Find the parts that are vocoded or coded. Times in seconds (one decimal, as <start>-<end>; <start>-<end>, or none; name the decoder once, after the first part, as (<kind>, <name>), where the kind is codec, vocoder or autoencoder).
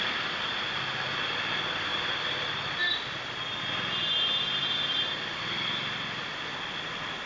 none